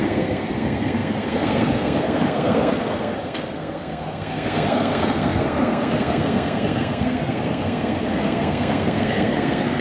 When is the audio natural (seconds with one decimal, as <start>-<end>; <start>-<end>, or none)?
none